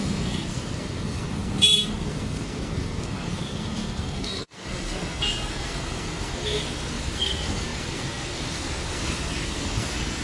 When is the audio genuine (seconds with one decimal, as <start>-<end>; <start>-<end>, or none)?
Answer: none